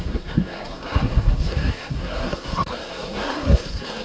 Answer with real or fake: fake